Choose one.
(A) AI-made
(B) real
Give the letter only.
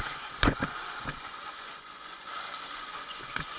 A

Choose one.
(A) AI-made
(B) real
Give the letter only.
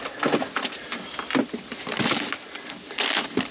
B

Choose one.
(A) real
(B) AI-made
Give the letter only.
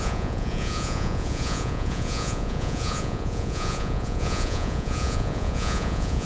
B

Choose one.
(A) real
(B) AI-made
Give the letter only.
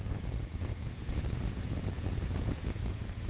B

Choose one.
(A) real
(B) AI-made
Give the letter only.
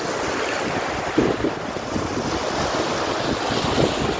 A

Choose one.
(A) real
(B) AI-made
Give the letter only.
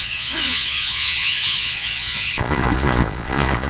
B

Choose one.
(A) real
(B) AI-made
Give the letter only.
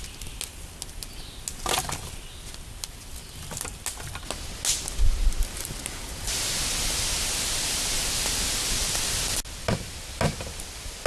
A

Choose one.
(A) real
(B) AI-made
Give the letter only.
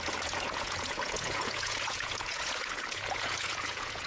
B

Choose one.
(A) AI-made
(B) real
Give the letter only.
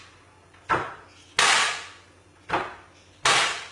B